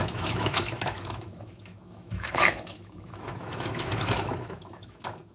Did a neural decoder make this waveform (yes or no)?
yes